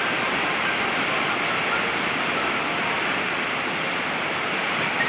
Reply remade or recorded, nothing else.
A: recorded